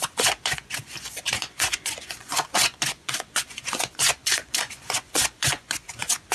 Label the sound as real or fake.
fake